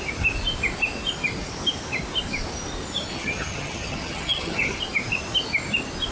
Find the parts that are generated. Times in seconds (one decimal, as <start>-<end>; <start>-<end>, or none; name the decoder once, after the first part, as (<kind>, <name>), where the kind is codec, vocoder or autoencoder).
3.1-4.8 (vocoder, HiFi-GAN)